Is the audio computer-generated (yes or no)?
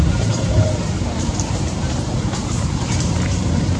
yes